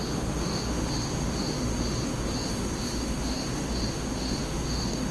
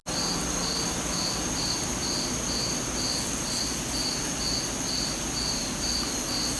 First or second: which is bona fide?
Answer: second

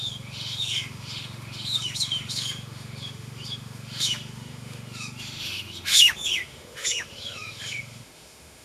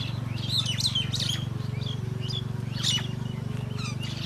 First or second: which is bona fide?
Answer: second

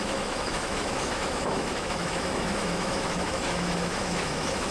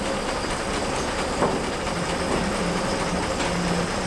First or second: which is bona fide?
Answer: second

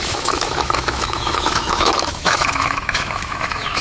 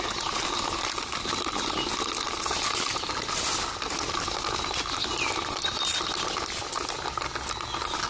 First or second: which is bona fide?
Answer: second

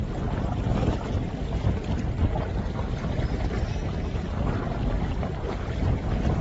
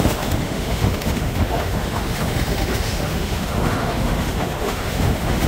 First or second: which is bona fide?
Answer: first